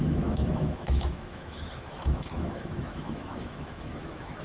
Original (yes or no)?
no